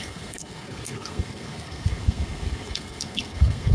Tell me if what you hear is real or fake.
fake